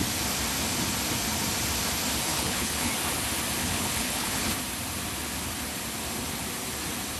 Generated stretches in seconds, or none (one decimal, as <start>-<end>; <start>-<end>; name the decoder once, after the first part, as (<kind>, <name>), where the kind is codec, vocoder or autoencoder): 2.3-2.9 (codec, HILCodec); 3.6-4.5